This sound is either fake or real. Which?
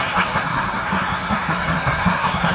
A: fake